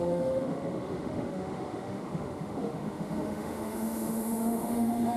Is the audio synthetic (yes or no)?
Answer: yes